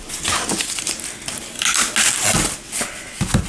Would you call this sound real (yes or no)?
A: yes